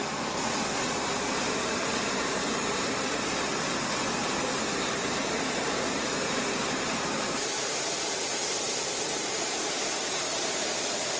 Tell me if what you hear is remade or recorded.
remade